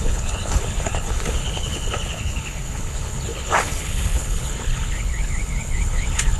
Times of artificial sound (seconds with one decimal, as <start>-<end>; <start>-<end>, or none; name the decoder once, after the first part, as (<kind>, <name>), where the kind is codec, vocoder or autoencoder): 0.0-6.4 (codec, HILCodec)